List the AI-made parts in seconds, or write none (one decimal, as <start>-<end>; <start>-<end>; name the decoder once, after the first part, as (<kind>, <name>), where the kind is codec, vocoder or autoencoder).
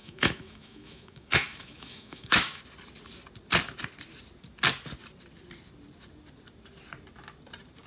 0.0-2.6 (autoencoder, DAC-VAE)